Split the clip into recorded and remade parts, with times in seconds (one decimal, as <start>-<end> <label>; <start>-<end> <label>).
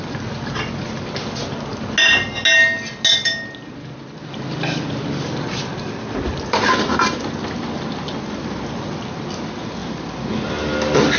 0.0-11.2 recorded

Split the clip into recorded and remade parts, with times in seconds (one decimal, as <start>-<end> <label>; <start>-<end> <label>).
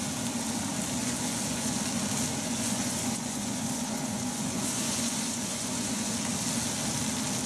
0.0-1.0 recorded; 1.0-1.8 remade; 1.8-2.3 recorded; 2.3-6.1 remade; 6.1-7.5 recorded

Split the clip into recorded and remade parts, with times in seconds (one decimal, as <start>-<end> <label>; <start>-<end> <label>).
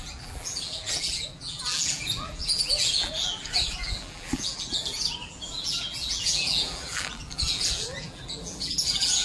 0.0-9.2 remade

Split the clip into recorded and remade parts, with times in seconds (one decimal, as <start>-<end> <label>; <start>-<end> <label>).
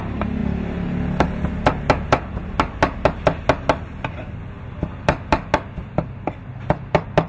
0.0-7.3 recorded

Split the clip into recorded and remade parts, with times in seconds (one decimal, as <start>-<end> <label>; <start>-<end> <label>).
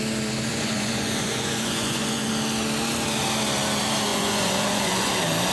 0.0-0.5 recorded; 0.5-2.3 remade; 2.3-4.1 recorded; 4.1-5.1 remade; 5.1-5.5 recorded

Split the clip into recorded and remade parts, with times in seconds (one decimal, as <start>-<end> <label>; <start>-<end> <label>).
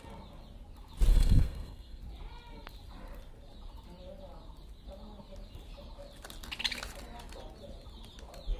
0.0-1.1 recorded; 1.1-2.0 remade; 2.0-8.6 recorded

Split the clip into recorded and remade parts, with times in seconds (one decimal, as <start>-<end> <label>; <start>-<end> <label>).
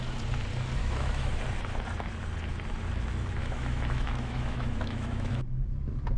0.0-0.8 recorded; 0.8-1.4 remade; 1.4-3.4 recorded; 3.4-5.3 remade; 5.3-6.2 recorded